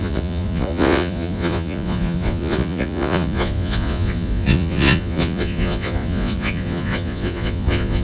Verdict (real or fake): fake